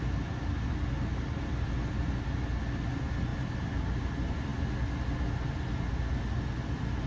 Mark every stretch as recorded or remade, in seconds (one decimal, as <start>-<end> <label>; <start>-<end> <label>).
0.0-7.1 recorded